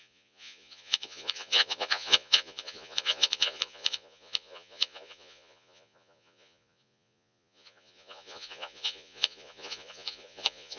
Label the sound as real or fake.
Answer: fake